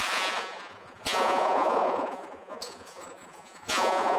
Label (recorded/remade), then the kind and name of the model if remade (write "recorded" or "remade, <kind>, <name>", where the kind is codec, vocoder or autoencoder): remade, vocoder, Vocos